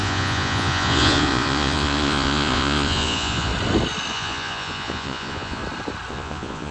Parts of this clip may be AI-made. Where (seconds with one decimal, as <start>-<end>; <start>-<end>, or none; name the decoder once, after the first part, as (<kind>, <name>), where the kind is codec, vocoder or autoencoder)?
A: 0.0-3.5 (vocoder, Vocos); 4.1-5.6; 6.1-6.7